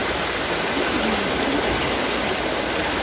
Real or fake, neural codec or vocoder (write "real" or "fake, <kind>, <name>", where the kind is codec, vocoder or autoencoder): real